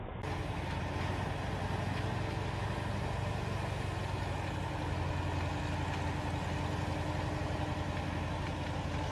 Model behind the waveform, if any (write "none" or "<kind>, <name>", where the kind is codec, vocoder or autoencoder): none